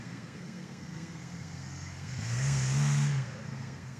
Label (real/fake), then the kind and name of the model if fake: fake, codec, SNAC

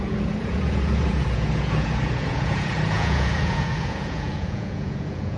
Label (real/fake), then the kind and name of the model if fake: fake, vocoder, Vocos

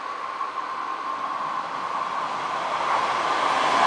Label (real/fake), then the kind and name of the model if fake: real